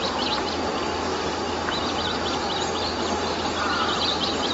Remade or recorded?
recorded